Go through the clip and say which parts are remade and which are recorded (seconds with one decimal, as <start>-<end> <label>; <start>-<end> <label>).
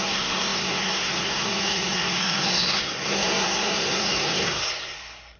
0.0-5.4 remade